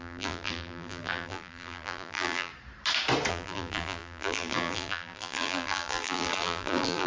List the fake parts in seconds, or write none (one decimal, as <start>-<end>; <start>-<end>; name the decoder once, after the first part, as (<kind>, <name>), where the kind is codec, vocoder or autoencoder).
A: 0.0-2.5 (vocoder, BigVGAN v2); 3.3-7.1